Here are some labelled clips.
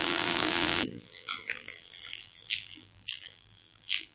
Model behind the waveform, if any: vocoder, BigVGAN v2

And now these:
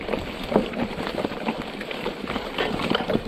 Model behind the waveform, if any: vocoder, BigVGAN v2